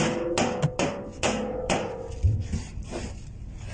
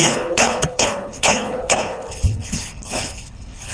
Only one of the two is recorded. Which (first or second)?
first